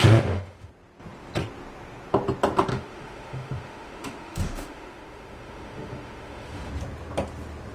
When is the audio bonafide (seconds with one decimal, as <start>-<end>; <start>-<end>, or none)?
0.7-2.7; 6.7-7.7

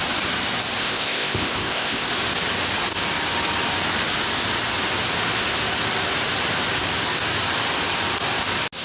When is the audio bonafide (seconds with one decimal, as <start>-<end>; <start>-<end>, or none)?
0.0-0.8; 2.1-8.8

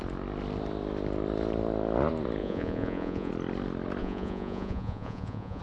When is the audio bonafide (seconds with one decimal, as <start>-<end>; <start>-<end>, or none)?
0.0-2.4; 3.3-4.0

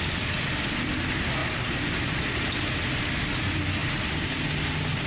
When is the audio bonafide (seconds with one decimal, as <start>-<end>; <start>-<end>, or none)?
0.0-1.4; 2.0-5.1

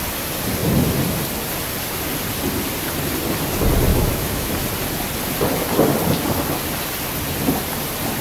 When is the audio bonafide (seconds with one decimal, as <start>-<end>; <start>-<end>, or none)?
0.0-3.9; 4.5-8.2

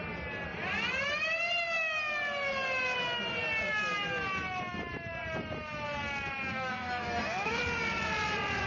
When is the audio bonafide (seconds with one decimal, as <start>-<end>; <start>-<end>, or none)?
0.0-6.5; 7.6-8.7

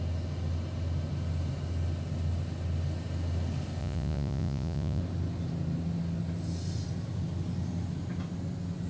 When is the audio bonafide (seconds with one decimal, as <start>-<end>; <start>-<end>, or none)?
0.0-3.8; 5.0-8.9